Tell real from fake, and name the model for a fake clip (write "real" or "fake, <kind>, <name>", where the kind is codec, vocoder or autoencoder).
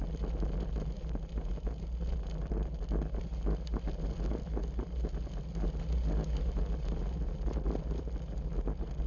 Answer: real